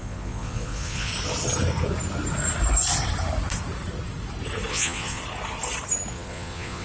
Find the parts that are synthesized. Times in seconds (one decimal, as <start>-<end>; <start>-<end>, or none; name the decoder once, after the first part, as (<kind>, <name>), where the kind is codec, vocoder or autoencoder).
0.0-1.1 (vocoder, Vocos); 4.7-5.2; 6.1-6.8